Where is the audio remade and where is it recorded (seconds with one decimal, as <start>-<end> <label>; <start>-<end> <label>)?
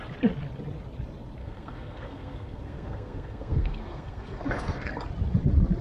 0.0-1.4 recorded; 1.4-4.9 remade; 4.9-5.8 recorded